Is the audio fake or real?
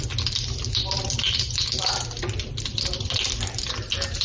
fake